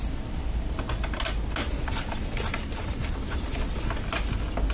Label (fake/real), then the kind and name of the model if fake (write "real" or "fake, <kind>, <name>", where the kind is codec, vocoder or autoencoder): real